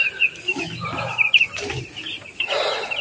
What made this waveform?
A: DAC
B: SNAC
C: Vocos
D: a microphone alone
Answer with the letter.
D